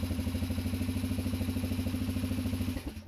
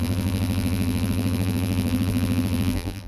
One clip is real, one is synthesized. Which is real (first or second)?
first